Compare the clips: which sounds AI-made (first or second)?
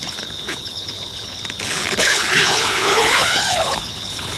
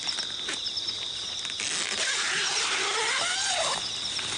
first